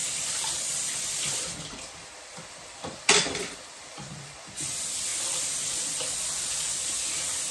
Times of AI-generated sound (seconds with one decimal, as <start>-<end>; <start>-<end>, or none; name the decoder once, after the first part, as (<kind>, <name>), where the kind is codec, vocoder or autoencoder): 0.0-4.5 (vocoder, BigVGAN v2)